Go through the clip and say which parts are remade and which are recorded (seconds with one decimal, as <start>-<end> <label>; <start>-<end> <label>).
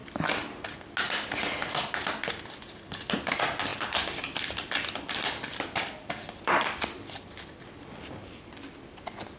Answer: 0.0-3.7 recorded; 3.7-7.9 remade; 7.9-9.4 recorded